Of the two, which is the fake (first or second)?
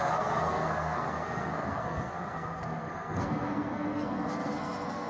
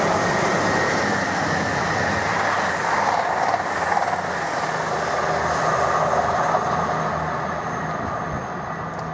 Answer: first